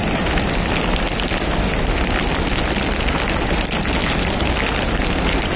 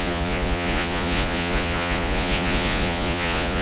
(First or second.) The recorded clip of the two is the first